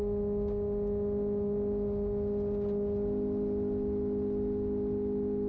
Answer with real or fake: real